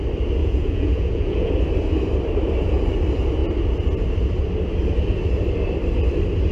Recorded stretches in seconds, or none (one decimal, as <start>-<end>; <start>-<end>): 0.0-0.4; 1.5-6.5